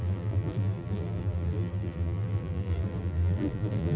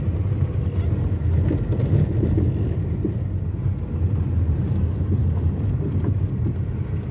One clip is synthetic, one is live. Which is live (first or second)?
second